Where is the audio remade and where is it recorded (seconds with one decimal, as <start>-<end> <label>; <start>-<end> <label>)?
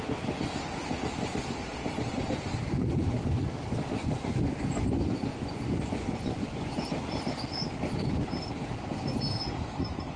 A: 0.0-5.3 recorded; 5.3-6.7 remade; 6.7-10.2 recorded